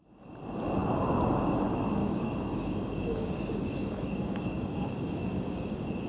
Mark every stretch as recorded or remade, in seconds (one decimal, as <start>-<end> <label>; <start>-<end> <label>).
0.0-2.0 recorded; 2.0-6.1 remade